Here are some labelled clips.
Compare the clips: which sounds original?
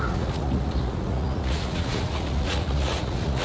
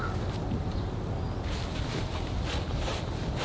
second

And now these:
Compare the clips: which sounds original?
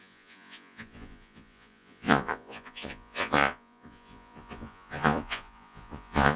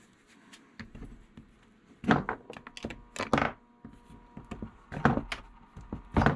second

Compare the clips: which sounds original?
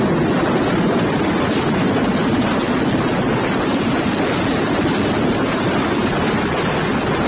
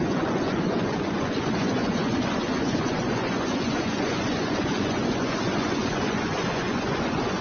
first